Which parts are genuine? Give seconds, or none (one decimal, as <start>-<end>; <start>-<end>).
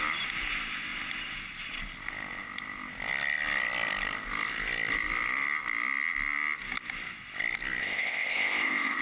0.0-7.8